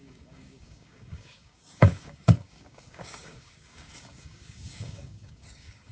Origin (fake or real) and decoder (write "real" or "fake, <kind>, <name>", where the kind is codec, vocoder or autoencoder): fake, codec, DAC